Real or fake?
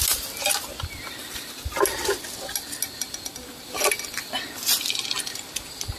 real